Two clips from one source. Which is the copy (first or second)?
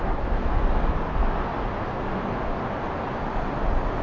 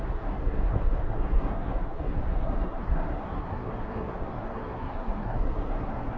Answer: second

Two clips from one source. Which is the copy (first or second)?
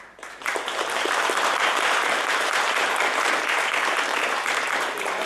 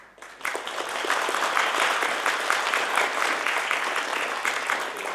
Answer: first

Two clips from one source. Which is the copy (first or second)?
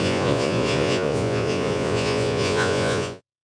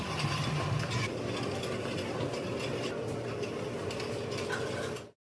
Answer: first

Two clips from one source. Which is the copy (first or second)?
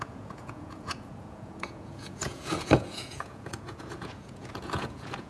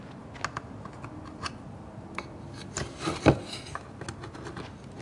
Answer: first